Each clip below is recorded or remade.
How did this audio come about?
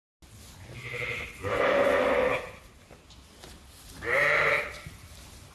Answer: recorded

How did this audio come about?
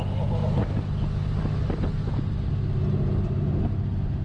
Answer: recorded